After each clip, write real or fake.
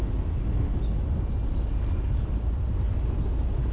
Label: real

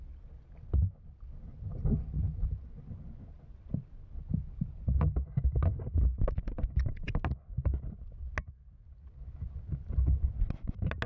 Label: real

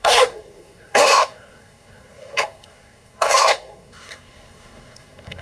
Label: fake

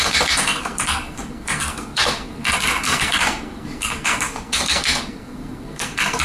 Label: fake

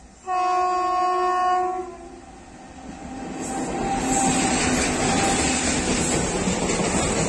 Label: real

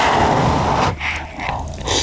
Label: real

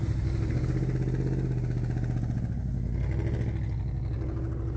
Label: real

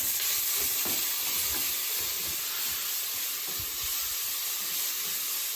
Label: real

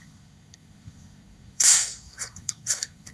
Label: fake